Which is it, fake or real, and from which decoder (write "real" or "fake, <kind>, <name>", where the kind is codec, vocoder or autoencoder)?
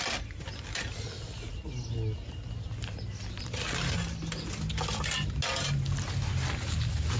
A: real